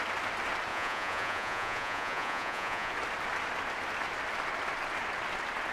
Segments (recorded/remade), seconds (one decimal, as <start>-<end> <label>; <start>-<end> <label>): 0.0-0.7 recorded; 0.7-2.9 remade; 2.9-5.7 recorded